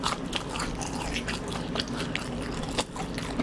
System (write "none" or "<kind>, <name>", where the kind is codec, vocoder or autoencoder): none